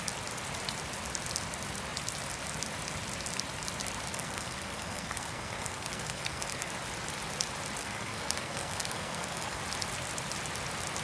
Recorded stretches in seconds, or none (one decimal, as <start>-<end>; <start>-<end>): 0.0-4.1; 6.7-7.8; 9.6-11.0